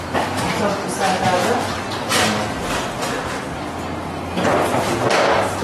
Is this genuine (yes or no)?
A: yes